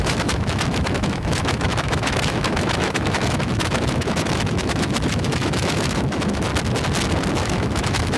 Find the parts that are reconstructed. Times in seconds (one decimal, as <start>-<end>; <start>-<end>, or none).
0.0-6.5; 7.3-8.2